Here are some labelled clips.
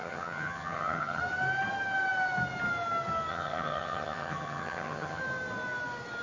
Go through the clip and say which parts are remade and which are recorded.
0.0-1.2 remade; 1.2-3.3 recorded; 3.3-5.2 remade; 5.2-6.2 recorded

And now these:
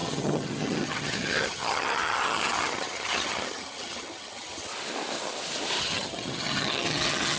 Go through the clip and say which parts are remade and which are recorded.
0.0-4.7 remade; 4.7-5.8 recorded; 5.8-7.4 remade

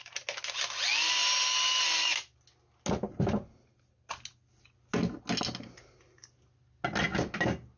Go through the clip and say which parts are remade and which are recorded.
0.0-7.8 recorded